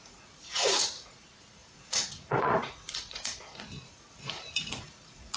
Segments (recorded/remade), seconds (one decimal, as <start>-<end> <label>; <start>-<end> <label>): 0.0-5.4 remade